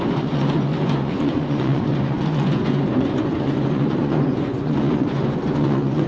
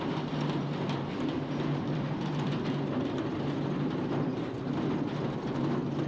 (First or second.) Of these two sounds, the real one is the second